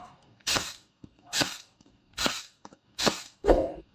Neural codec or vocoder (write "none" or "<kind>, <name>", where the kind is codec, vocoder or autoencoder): codec, DAC